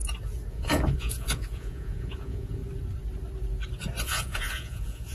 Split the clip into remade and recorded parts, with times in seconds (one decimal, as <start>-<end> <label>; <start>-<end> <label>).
0.0-0.5 recorded; 0.5-2.6 remade; 2.6-4.0 recorded; 4.0-5.1 remade